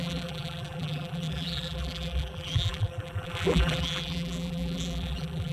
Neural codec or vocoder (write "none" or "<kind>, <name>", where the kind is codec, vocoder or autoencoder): vocoder, BigVGAN v2